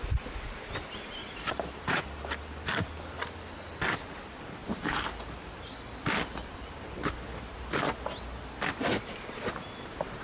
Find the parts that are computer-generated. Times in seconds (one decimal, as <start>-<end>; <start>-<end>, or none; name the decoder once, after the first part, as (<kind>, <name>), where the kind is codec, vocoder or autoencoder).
1.2-2.2 (vocoder, BigVGAN v2)